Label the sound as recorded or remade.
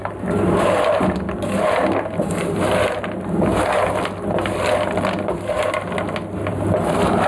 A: recorded